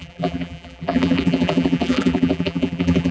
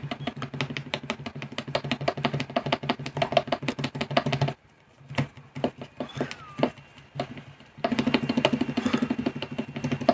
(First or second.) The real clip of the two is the second